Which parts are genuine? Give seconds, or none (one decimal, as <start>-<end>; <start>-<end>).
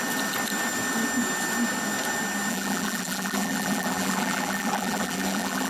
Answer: 0.0-2.5